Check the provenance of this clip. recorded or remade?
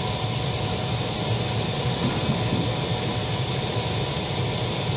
recorded